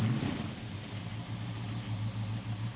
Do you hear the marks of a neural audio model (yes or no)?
no